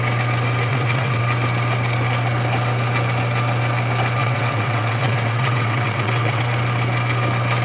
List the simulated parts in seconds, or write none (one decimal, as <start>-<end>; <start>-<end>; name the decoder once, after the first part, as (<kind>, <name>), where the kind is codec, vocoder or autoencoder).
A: 0.7-1.2 (vocoder, WaveNeXt); 4.2-6.4